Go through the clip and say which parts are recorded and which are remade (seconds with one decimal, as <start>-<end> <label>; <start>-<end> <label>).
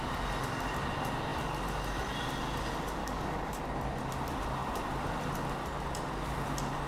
0.0-3.0 recorded; 3.0-3.6 remade; 3.6-6.9 recorded